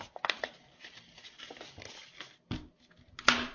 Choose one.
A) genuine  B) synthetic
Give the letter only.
A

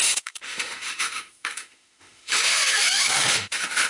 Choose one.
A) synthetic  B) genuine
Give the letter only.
A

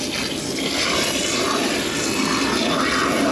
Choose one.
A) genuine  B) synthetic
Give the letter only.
A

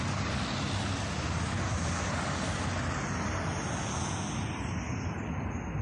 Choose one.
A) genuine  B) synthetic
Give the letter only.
A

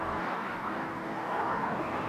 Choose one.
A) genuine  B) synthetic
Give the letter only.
B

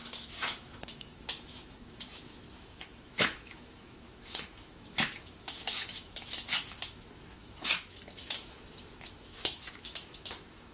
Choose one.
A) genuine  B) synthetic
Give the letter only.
B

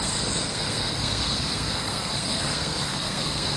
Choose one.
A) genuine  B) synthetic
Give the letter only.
B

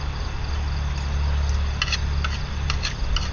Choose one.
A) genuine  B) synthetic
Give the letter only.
A